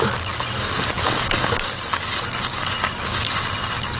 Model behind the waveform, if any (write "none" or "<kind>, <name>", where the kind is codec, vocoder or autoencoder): none